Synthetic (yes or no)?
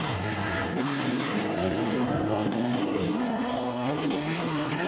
yes